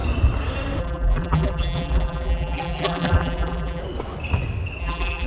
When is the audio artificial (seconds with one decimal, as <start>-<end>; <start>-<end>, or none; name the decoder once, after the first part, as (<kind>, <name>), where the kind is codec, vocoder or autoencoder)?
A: 0.8-3.8 (vocoder, BigVGAN v2); 4.8-5.3

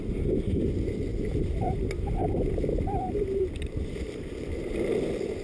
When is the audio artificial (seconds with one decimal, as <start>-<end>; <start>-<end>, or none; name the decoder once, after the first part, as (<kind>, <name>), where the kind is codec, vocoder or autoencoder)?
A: 1.1-4.3 (vocoder, BigVGAN v2)